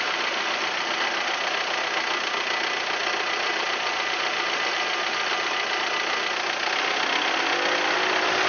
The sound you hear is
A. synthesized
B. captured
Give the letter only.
B